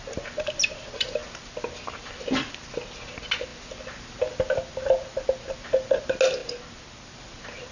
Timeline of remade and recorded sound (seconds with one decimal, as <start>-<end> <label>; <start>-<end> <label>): 0.0-7.7 recorded